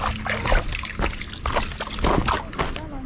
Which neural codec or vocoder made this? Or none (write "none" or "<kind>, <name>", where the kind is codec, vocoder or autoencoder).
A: none